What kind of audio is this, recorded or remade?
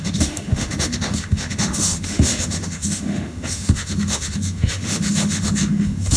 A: remade